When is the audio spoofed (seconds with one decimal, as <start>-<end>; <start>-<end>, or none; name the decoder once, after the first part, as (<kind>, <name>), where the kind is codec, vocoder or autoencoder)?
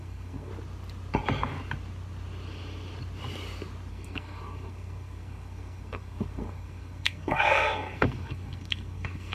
0.0-0.5 (codec, SNAC); 3.9-9.3